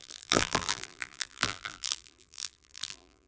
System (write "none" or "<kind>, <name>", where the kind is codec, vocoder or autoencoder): vocoder, BigVGAN v2